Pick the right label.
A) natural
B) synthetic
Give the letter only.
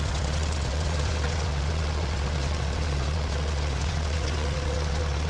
B